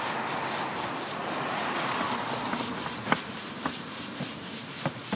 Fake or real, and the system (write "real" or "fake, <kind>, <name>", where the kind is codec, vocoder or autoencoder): real